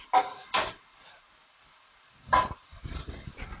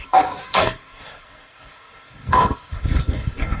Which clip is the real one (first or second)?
first